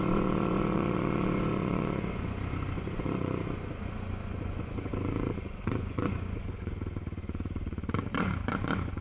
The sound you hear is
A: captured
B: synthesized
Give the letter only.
B